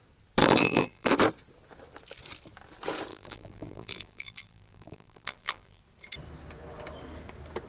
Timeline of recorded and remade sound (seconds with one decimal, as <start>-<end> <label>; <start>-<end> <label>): 0.0-0.4 recorded; 0.4-1.1 remade; 1.1-3.1 recorded; 3.1-5.8 remade; 5.8-7.7 recorded